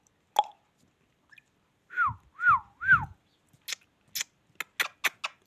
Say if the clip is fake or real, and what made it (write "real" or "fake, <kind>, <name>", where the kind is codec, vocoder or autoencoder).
real